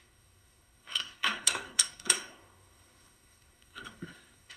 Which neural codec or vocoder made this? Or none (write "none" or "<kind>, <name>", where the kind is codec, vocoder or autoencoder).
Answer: codec, SNAC